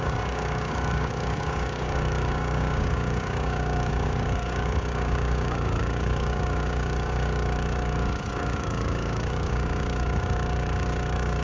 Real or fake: fake